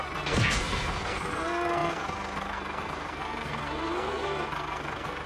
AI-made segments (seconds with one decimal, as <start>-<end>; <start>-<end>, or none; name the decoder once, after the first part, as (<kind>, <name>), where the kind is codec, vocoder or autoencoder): 0.0-5.3 (codec, SNAC)